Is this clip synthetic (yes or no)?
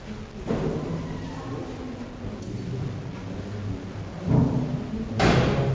no